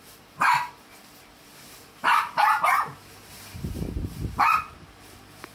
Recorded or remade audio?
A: remade